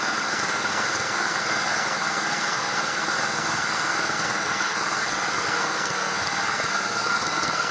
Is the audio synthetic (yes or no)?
yes